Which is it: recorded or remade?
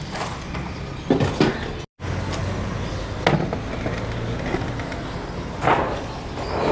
recorded